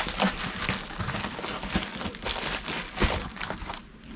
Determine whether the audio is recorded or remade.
recorded